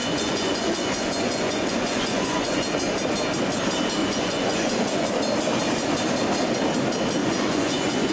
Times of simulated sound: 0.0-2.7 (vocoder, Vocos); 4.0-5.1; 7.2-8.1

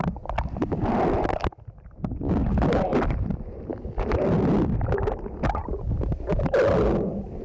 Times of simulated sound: none

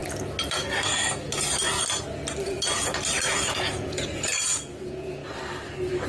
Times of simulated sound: 3.3-5.2 (vocoder, Vocos)

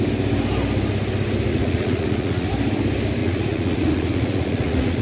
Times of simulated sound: 1.5-2.5 (vocoder, Vocos); 3.2-5.0

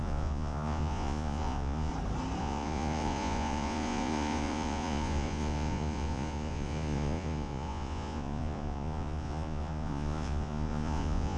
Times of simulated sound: 0.0-1.9 (vocoder, Vocos); 2.4-11.4

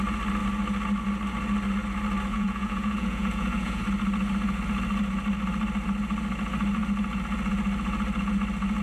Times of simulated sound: 2.3-3.8 (vocoder, Vocos)